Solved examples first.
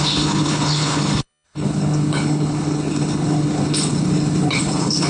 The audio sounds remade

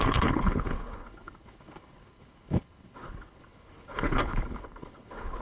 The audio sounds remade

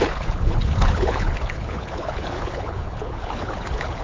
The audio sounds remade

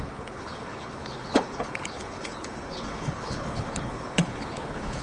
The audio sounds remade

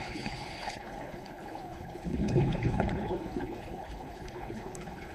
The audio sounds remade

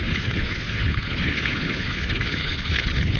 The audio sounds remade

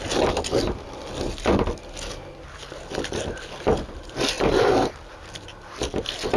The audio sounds recorded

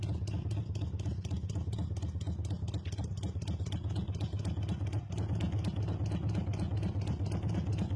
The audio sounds recorded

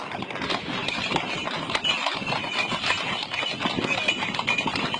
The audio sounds recorded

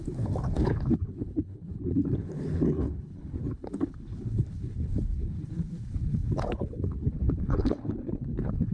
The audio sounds remade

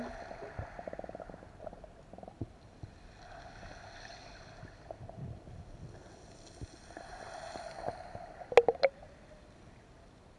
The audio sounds recorded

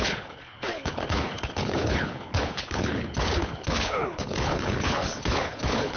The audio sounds remade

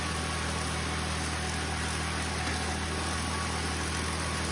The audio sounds recorded